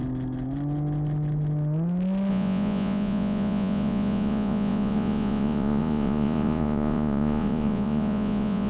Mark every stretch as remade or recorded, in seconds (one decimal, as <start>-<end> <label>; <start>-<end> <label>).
0.0-2.3 recorded; 2.3-8.7 remade